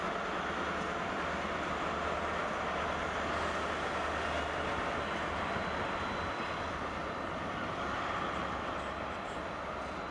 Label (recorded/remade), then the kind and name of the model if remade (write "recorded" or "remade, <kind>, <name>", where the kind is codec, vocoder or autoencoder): recorded